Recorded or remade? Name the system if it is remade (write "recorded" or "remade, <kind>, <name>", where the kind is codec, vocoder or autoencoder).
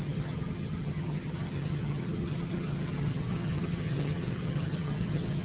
remade, vocoder, HiFi-GAN